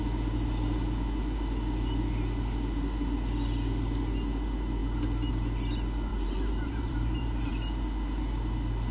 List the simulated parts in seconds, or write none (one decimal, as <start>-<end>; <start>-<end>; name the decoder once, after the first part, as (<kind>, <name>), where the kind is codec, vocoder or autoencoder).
6.1-7.5 (vocoder, BigVGAN v2)